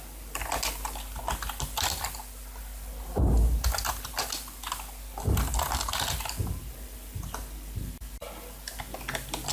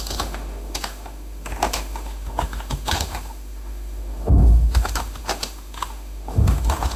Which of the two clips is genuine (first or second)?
first